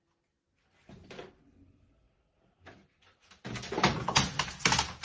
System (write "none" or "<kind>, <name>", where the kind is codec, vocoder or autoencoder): none